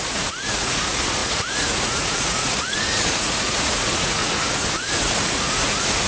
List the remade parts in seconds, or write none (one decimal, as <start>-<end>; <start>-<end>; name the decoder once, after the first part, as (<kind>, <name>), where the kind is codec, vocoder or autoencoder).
0.0-6.1 (vocoder, Vocos)